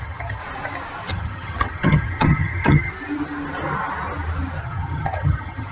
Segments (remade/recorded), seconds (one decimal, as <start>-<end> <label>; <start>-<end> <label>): 0.0-0.4 remade; 0.4-1.1 recorded; 1.1-2.9 remade; 2.9-4.6 recorded; 4.6-5.7 remade